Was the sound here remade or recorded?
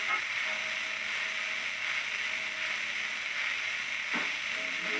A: recorded